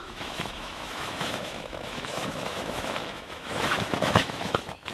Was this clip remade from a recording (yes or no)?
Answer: yes